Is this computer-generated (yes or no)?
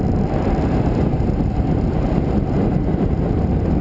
no